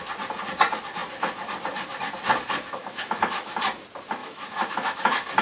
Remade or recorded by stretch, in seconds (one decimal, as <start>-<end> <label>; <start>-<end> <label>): 0.0-2.8 recorded; 2.8-3.5 remade; 3.5-4.2 recorded; 4.2-5.4 remade